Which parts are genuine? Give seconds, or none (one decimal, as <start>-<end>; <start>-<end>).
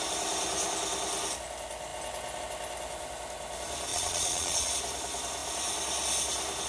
0.0-3.9; 4.7-6.7